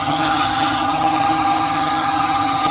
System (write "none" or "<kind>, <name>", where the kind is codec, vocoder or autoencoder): vocoder, HiFi-GAN